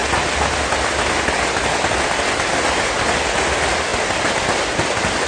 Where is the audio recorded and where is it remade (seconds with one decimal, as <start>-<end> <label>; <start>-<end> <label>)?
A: 0.0-5.3 recorded